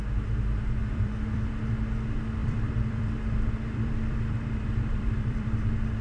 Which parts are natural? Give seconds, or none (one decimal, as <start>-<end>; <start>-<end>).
0.0-0.8; 1.7-2.4